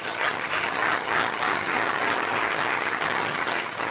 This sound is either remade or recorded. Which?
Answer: remade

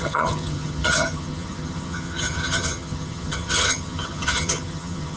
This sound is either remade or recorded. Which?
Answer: remade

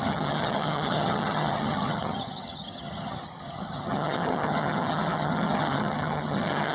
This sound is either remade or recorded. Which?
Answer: remade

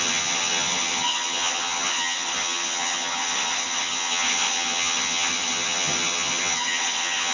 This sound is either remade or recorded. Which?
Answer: remade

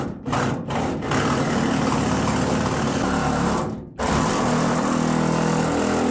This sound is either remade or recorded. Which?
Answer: recorded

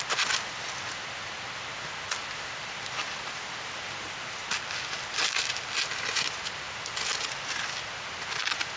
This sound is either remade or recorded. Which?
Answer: recorded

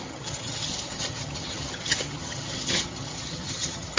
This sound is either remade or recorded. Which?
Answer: remade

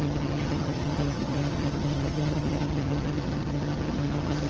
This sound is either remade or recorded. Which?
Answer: remade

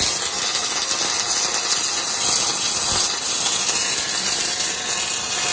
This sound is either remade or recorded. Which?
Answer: recorded